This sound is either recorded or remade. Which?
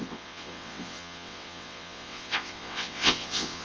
remade